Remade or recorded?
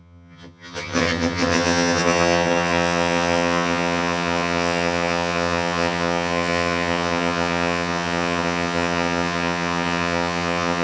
remade